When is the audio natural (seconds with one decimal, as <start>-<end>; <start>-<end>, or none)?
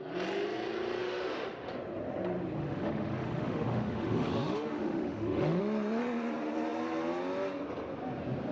0.0-1.0; 1.7-2.6; 5.6-8.5